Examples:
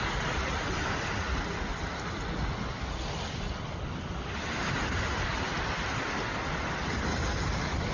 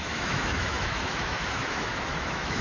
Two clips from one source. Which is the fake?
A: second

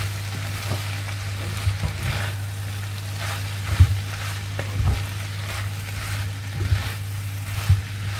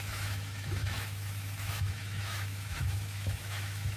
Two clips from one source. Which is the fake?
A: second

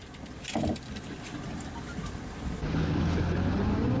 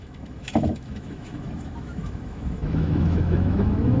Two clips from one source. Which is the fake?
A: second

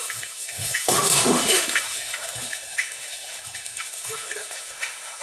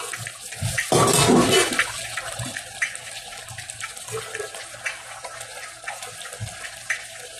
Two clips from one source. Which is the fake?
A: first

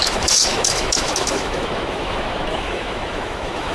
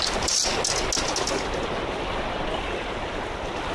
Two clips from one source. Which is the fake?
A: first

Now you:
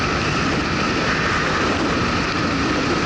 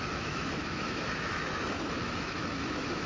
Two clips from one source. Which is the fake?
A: second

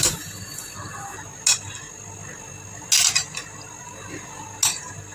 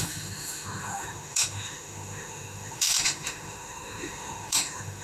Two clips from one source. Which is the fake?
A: second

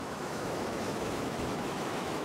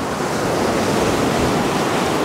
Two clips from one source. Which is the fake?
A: first